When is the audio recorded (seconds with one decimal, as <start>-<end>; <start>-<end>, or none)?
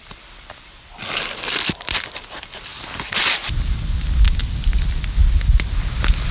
0.0-6.3